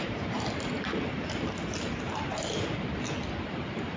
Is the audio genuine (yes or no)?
yes